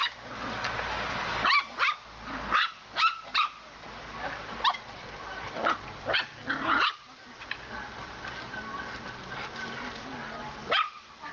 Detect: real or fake real